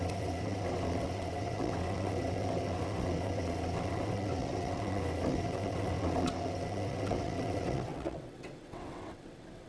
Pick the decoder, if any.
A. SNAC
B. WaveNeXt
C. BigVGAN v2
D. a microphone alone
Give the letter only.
B